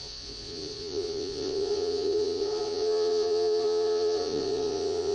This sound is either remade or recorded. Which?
remade